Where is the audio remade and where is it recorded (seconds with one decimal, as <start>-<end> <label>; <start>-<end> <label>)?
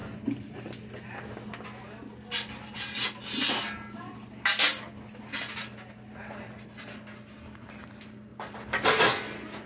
0.0-9.7 recorded